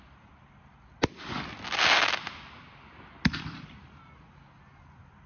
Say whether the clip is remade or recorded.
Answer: recorded